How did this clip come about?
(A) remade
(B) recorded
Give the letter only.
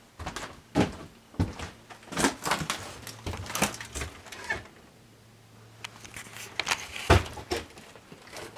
B